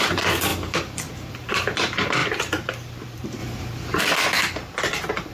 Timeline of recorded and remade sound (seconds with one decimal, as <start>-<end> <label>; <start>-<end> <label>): 0.0-2.2 remade; 2.2-2.7 recorded; 2.7-3.4 remade; 3.4-4.0 recorded; 4.0-5.3 remade